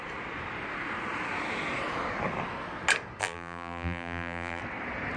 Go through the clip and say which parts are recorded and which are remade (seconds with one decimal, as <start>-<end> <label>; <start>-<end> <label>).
0.0-3.2 recorded; 3.2-4.6 remade; 4.6-5.2 recorded